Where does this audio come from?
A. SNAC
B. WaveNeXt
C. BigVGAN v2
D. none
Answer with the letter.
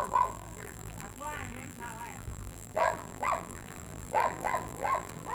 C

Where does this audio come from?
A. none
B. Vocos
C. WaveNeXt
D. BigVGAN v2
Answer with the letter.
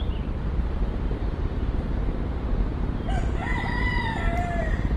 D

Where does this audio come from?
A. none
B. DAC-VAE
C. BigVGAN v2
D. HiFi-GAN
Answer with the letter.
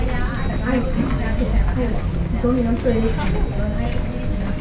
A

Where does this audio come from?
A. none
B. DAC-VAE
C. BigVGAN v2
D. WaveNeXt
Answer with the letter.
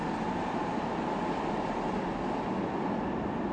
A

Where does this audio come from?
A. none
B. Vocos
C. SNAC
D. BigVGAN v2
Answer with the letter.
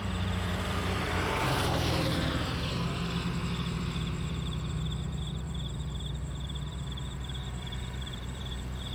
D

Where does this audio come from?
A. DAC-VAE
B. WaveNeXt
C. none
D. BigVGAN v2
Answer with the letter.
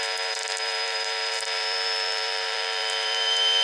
D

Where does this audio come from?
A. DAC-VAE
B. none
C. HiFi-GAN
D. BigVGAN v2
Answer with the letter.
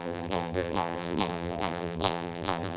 D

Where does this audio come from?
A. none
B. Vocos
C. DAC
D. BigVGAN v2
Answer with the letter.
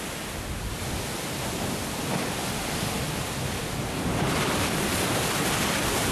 A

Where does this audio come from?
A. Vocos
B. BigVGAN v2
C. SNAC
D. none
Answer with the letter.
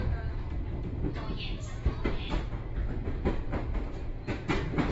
D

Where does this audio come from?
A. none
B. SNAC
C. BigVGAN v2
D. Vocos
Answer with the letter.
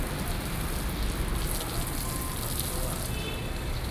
A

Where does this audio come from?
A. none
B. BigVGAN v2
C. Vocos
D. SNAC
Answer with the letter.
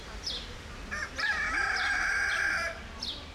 B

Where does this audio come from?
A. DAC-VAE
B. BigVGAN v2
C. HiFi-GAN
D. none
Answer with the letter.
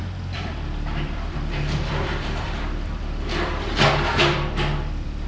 B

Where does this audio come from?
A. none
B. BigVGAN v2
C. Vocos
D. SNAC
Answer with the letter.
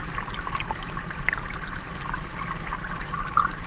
A